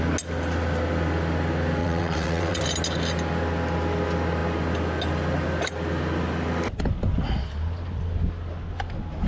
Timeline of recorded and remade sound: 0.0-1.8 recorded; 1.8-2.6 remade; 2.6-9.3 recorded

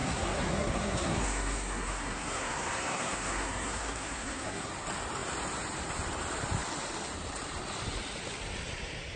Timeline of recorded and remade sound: 0.0-4.7 remade; 4.7-9.2 recorded

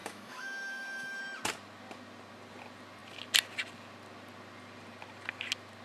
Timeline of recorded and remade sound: 0.0-1.2 remade; 1.2-5.8 recorded

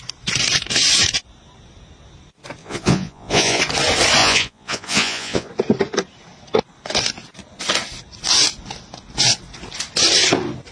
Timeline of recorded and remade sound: 0.0-2.6 recorded; 2.6-3.6 remade; 3.6-4.2 recorded; 4.2-5.5 remade; 5.5-10.7 recorded